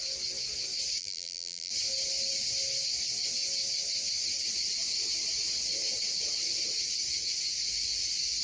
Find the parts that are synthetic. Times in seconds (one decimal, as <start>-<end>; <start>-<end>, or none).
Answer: 1.0-1.7